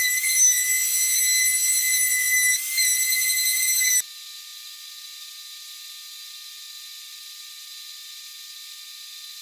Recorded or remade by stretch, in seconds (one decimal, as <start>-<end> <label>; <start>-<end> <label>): 0.0-9.4 recorded